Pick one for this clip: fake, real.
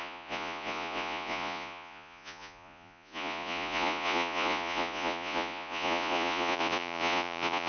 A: fake